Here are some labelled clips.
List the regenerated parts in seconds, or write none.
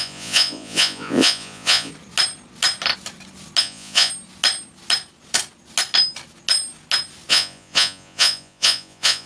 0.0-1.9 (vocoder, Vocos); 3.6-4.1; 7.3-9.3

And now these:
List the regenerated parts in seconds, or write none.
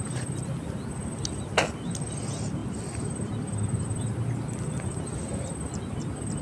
none